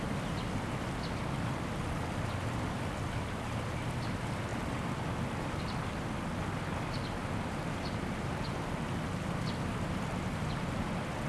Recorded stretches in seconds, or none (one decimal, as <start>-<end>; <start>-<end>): 0.0-11.3